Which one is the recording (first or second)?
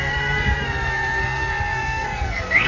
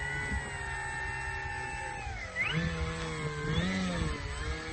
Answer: second